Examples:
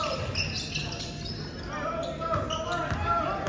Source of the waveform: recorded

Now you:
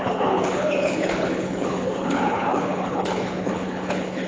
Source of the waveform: remade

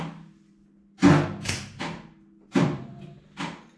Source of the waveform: recorded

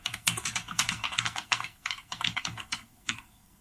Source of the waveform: remade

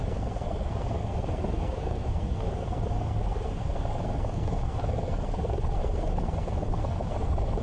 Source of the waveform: remade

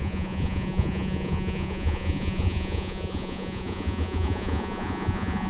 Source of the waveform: remade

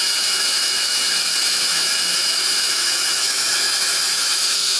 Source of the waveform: remade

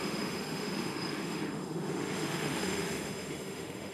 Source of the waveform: remade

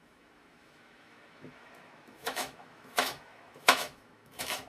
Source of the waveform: remade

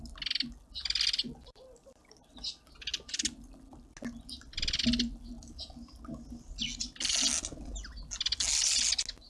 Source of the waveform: recorded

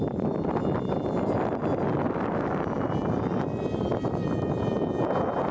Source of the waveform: recorded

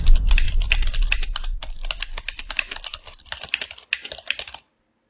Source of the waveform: remade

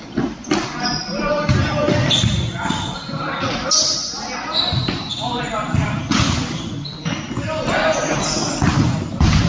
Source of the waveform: recorded